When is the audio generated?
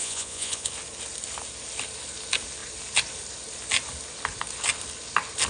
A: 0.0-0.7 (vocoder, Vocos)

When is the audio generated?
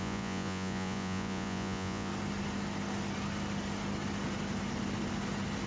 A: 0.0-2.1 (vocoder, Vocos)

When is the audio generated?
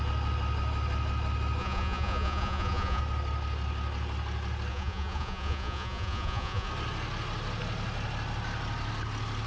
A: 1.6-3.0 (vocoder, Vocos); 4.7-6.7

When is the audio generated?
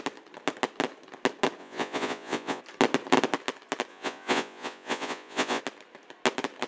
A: 1.6-2.6 (vocoder, Vocos); 3.9-5.6